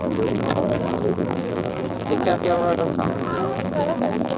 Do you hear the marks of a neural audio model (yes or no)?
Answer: yes